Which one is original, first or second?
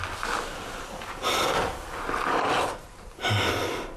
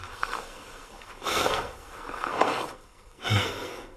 first